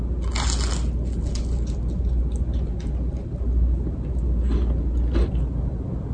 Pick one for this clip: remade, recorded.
recorded